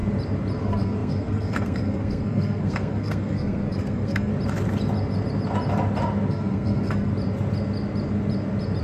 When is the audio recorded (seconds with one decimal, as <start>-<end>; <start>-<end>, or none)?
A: 0.0-0.6; 4.3-6.3; 7.1-8.8